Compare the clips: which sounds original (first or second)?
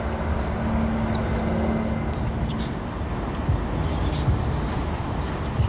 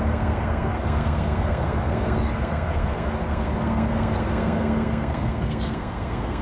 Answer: first